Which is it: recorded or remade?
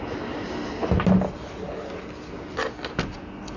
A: recorded